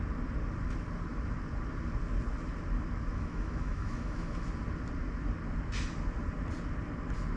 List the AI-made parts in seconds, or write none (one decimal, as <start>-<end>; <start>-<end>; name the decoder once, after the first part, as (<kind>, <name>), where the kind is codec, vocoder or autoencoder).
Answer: 3.1-4.5 (autoencoder, DAC-VAE)